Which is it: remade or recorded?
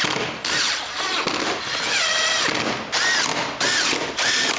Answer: recorded